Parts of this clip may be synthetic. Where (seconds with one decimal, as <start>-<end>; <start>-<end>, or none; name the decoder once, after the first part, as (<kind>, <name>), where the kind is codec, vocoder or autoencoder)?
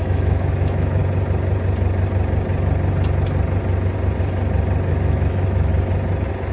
0.0-1.0 (autoencoder, DAC-VAE); 4.9-5.7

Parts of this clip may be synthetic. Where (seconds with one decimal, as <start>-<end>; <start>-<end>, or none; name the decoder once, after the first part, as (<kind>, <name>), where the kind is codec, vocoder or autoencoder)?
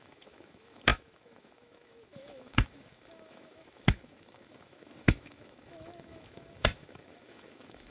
0.0-7.9 (autoencoder, DAC-VAE)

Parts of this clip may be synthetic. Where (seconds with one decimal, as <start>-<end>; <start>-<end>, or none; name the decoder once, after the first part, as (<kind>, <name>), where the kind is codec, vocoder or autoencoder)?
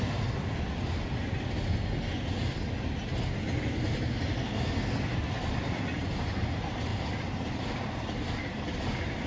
none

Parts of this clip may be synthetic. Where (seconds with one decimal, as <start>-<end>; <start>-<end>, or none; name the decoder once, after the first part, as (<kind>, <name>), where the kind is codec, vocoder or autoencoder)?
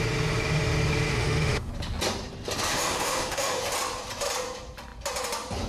1.1-1.7 (autoencoder, DAC-VAE); 2.7-3.6